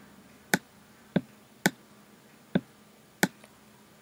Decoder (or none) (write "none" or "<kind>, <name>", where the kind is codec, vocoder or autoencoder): none